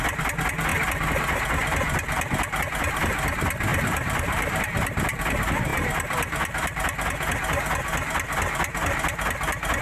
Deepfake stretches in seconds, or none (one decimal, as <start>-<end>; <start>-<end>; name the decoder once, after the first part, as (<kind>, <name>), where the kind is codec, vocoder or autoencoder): 3.7-4.6 (vocoder, BigVGAN v2)